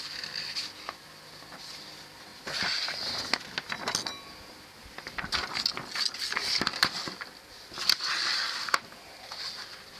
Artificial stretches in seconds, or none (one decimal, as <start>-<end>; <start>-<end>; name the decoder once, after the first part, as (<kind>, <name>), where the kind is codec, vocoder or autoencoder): none